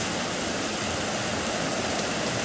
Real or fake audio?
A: real